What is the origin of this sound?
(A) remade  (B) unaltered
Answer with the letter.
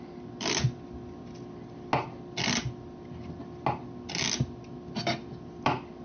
B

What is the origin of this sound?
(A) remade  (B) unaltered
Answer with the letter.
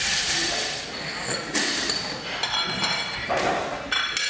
B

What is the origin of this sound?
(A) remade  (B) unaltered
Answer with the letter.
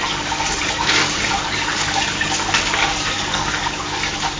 A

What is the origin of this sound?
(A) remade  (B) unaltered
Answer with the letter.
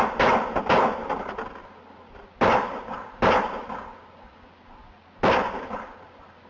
B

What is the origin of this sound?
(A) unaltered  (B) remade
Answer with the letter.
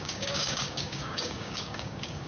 B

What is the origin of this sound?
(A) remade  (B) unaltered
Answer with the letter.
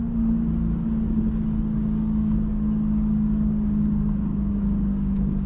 A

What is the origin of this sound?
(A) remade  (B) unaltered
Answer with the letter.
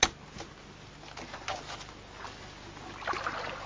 B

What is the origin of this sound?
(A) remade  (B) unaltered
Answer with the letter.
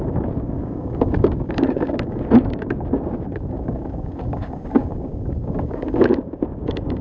A